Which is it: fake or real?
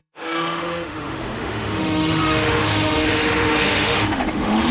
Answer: fake